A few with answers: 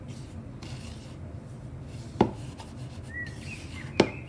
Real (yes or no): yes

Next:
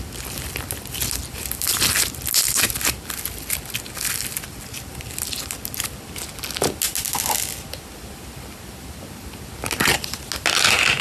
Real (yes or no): yes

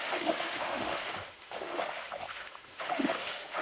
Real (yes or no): no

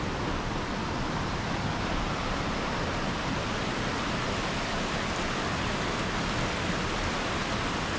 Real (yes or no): yes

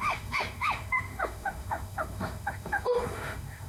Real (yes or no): no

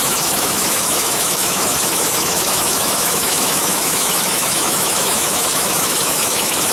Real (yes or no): no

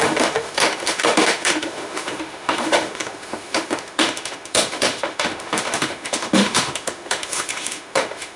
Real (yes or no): no